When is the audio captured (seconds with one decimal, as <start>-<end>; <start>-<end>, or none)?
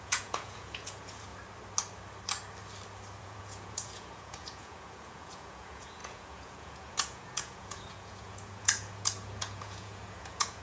1.3-3.2